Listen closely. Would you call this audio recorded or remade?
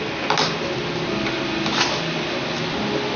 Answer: recorded